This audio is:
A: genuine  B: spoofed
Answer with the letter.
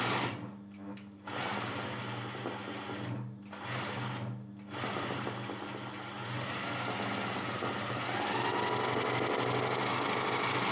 A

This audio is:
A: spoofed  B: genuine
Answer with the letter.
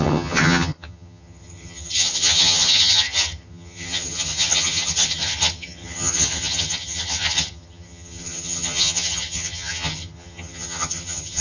A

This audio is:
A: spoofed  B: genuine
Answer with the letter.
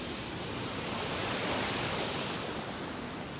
B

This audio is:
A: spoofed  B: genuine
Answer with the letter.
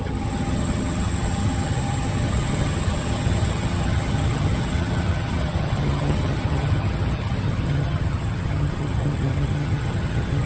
A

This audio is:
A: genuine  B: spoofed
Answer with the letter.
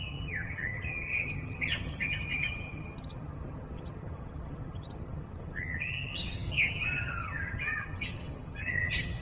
B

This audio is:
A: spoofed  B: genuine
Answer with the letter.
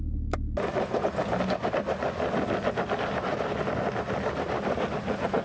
B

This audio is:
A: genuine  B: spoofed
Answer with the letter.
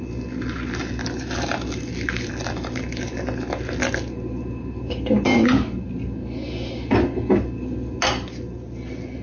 A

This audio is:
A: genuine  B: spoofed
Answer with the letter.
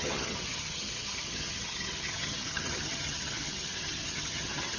B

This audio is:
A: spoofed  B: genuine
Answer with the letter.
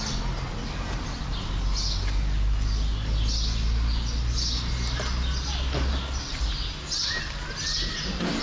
B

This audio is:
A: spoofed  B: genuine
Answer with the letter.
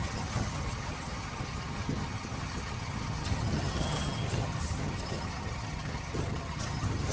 A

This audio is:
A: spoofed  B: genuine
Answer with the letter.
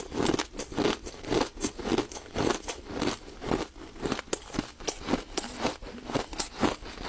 B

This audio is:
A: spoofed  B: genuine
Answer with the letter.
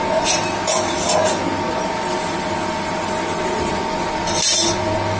B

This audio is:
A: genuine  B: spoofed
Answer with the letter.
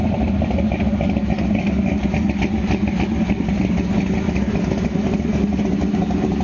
A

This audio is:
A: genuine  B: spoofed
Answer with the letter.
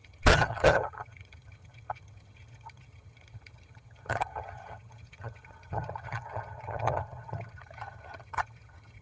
B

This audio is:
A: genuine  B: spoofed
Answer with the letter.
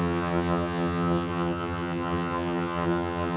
B